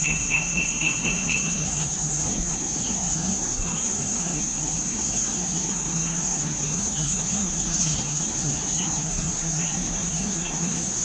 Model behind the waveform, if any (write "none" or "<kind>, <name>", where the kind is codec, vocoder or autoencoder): codec, SNAC